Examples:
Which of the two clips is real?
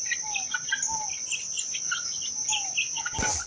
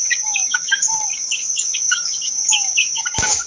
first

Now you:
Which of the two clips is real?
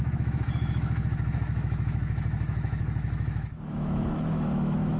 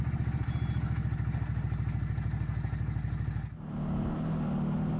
second